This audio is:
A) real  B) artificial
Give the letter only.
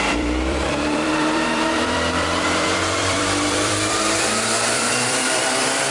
B